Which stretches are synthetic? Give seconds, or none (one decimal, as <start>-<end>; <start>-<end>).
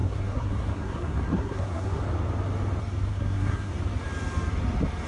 0.0-2.0; 3.1-3.7